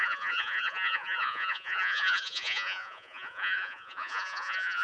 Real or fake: fake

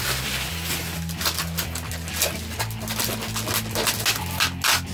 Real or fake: real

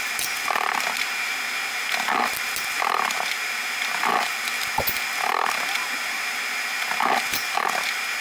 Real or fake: real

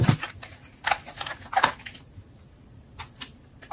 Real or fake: real